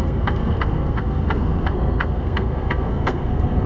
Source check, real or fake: fake